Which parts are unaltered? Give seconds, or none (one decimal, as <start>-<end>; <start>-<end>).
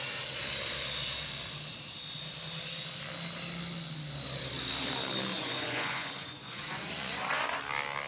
0.0-5.3; 7.6-8.1